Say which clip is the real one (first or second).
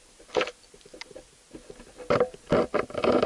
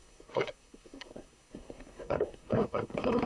first